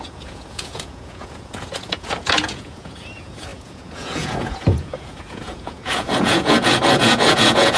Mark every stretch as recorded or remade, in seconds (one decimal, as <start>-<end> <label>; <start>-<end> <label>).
0.0-7.8 remade